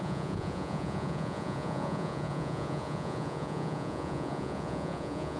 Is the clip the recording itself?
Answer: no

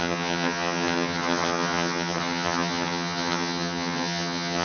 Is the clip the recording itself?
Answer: no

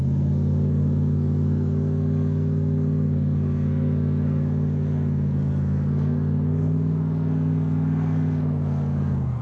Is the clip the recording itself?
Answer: no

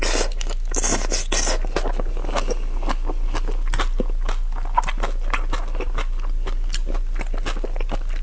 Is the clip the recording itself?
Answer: yes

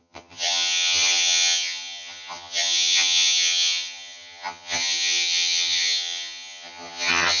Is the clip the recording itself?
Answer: no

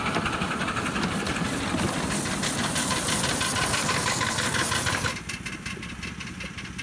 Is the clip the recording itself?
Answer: yes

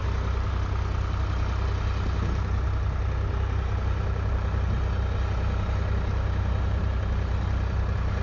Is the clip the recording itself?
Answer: yes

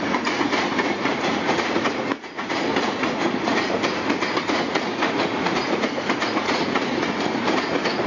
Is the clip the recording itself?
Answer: no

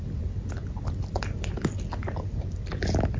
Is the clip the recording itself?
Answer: yes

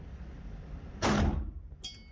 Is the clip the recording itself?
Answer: yes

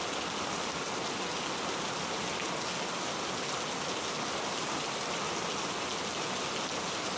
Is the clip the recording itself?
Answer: yes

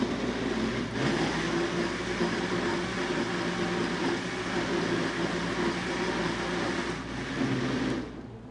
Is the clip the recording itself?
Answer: yes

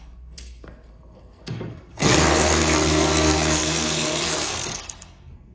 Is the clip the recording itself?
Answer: no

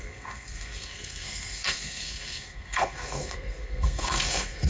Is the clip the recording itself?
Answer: no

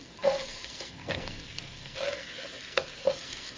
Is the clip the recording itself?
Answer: no